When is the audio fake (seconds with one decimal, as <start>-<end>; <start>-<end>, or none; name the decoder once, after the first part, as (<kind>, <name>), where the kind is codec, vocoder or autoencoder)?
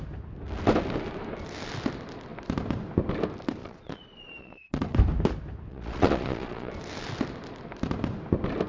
3.6-5.0 (vocoder, Vocos); 5.7-6.7